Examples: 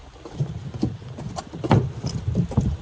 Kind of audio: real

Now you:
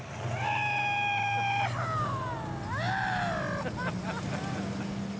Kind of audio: real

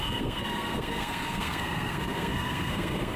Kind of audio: fake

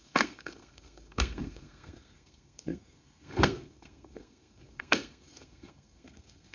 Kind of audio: fake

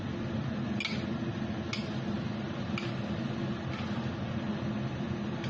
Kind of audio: real